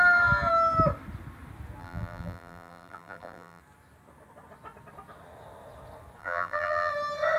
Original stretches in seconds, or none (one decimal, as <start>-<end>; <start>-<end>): 0.0-1.8; 3.6-6.2; 6.9-7.4